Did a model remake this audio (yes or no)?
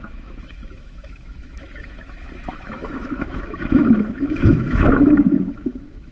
yes